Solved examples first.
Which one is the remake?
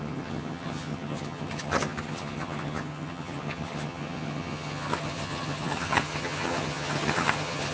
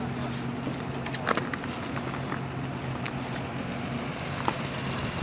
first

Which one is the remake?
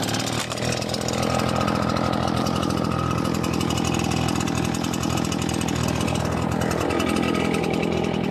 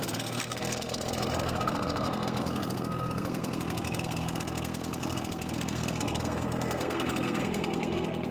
second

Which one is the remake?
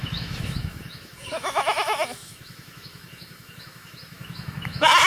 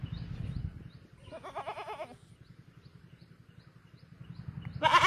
first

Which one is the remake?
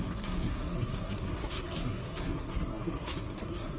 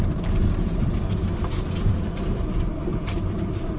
first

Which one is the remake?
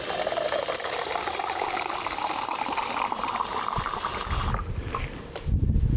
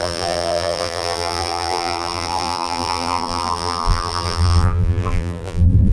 second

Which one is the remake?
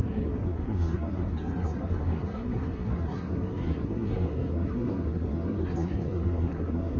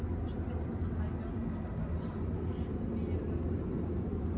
first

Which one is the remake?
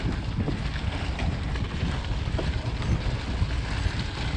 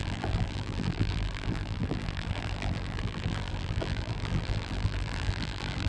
second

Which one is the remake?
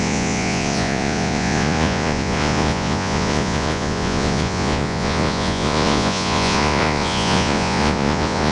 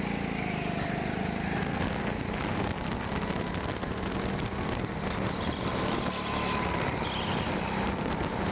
first